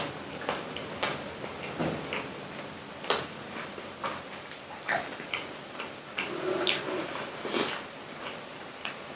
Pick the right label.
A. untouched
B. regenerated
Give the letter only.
A